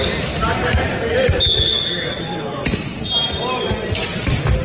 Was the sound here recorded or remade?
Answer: recorded